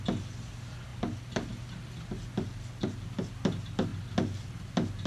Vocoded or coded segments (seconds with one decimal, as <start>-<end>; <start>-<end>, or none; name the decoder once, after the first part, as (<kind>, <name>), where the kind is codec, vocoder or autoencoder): none